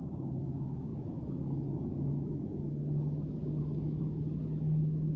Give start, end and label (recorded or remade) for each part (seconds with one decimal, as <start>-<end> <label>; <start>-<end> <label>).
0.0-5.2 remade